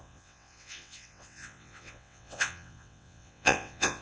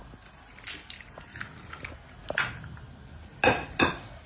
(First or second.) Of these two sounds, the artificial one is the first